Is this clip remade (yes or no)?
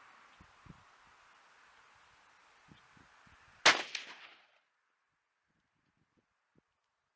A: no